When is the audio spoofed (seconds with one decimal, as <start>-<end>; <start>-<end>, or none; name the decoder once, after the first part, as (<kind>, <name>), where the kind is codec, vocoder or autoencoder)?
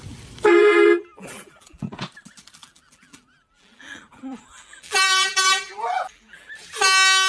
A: 0.6-2.0 (vocoder, BigVGAN v2); 2.6-6.5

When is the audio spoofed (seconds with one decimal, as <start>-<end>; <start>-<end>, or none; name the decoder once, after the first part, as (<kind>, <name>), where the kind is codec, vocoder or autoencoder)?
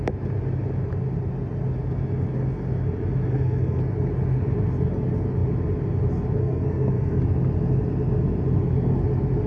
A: 3.3-3.8 (codec, SNAC); 6.4-7.2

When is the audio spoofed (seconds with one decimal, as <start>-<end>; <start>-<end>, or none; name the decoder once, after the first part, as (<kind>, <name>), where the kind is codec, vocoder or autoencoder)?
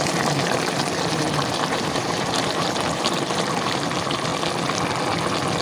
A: 0.0-4.3 (vocoder, BigVGAN v2)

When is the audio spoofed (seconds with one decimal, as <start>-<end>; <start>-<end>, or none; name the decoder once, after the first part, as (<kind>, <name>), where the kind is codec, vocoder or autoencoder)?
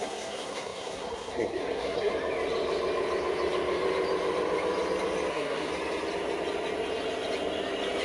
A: 0.0-2.1 (codec, SNAC); 5.3-5.7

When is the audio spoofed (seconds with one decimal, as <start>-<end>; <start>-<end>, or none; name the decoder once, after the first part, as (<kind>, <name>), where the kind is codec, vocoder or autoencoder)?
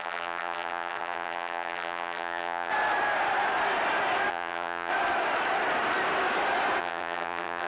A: 0.0-2.7 (vocoder, HiFi-GAN); 4.3-4.9; 6.8-7.7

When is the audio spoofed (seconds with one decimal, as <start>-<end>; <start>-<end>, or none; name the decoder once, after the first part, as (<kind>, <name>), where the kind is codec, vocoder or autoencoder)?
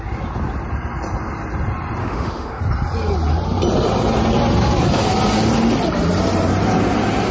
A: 2.0-2.6 (autoencoder, DAC-VAE)